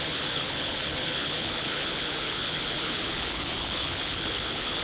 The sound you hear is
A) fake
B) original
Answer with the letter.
A